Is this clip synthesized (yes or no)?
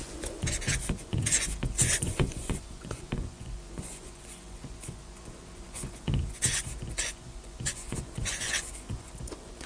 yes